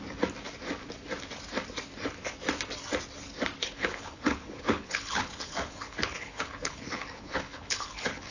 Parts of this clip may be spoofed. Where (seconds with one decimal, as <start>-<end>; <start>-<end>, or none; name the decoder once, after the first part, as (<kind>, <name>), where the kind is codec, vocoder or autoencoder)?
3.6-8.3 (codec, HILCodec)